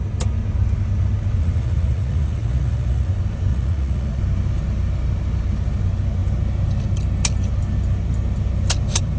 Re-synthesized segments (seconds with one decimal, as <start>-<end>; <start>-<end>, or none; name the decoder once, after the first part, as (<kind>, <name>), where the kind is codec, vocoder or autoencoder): 1.4-3.1 (vocoder, Vocos); 3.5-4.2